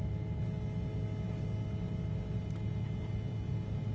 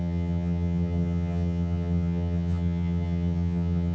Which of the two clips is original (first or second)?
first